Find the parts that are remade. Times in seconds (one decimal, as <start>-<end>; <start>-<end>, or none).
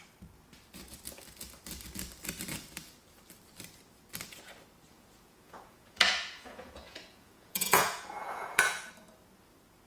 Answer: 4.9-8.9